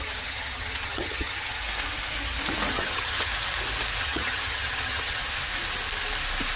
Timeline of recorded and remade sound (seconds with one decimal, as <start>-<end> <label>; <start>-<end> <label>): 0.0-1.6 remade; 1.6-2.7 recorded; 2.7-3.3 remade; 3.3-4.0 recorded; 4.0-5.2 remade; 5.2-6.6 recorded